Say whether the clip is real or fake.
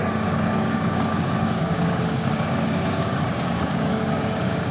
fake